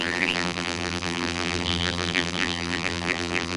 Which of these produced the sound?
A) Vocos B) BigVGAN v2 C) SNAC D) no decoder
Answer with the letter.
B